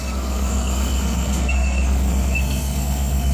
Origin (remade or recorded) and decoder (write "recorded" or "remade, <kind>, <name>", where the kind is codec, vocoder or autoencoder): remade, codec, SNAC